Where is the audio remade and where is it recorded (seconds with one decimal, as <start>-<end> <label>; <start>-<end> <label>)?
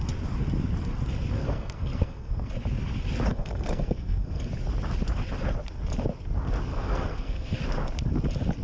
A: 0.0-1.4 recorded; 1.4-2.5 remade; 2.5-3.3 recorded; 3.3-4.5 remade; 4.5-6.7 recorded; 6.7-7.6 remade; 7.6-8.6 recorded